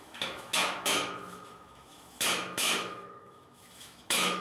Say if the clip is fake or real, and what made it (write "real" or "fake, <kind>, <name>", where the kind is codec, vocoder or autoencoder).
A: fake, autoencoder, DAC-VAE